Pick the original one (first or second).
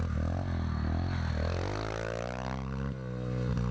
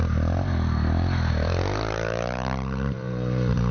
first